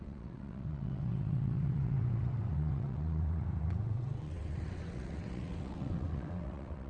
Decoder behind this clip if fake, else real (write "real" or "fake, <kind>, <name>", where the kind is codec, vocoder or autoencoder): fake, vocoder, WaveNeXt